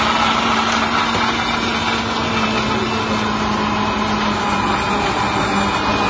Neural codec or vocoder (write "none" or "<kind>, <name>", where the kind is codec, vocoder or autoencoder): none